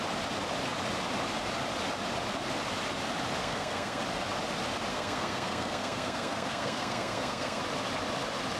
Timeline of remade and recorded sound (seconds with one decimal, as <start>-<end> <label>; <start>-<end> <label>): 0.0-3.4 recorded; 3.4-4.0 remade; 4.0-4.9 recorded; 4.9-7.6 remade; 7.6-8.6 recorded